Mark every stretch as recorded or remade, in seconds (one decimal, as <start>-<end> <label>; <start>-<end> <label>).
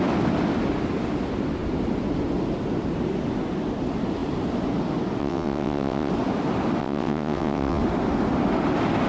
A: 0.0-5.2 recorded; 5.2-6.1 remade; 6.1-6.8 recorded; 6.8-7.8 remade; 7.8-9.1 recorded